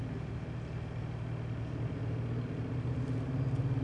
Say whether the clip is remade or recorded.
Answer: recorded